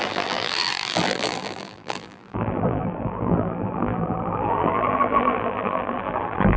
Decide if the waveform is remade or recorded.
remade